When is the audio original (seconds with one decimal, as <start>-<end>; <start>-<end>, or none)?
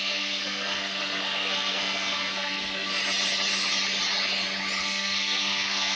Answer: 3.0-4.8